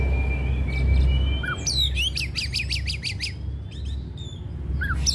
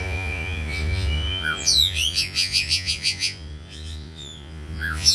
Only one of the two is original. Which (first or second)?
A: first